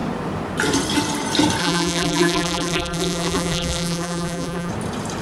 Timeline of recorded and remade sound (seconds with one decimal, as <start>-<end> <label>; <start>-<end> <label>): 0.0-1.6 recorded; 1.6-4.7 remade; 4.7-5.2 recorded